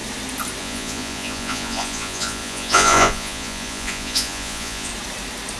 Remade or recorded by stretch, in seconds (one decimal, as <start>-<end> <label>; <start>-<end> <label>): 0.0-0.6 recorded; 0.6-4.9 remade; 4.9-5.6 recorded